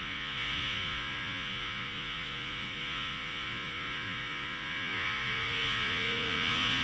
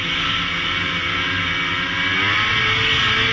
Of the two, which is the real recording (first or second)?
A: second